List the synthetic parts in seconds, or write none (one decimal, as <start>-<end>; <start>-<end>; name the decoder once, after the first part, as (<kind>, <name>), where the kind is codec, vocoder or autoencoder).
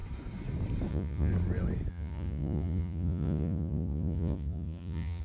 0.9-1.3 (vocoder, Vocos); 1.9-5.2